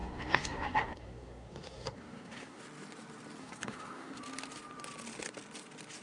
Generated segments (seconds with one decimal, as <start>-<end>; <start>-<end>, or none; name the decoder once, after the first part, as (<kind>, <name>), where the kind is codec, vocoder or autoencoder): 0.0-2.6 (codec, SNAC); 3.4-4.2